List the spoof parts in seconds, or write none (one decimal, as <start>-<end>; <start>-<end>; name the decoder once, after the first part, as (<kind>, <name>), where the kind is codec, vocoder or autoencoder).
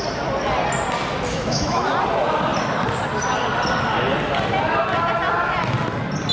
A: 1.3-1.9 (autoencoder, DAC-VAE)